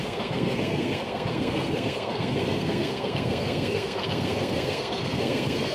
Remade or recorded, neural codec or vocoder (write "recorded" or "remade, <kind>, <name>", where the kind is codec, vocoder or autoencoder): remade, codec, SNAC